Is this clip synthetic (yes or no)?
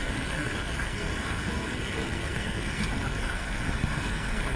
yes